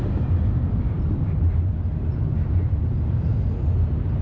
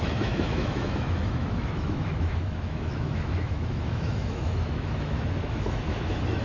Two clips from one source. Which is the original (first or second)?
first